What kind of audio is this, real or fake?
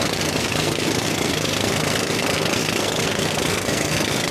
fake